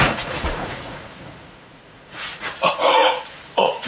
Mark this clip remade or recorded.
remade